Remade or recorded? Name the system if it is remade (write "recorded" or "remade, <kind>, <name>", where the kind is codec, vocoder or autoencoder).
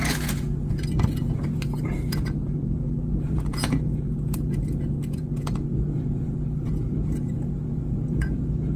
remade, vocoder, Vocos